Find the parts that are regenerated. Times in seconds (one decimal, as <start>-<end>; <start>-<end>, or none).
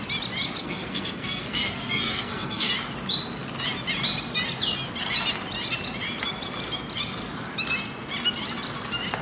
0.6-2.7